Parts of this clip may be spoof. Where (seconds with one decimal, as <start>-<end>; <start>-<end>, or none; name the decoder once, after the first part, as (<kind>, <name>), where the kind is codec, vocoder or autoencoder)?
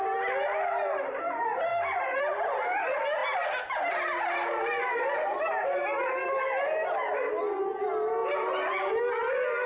none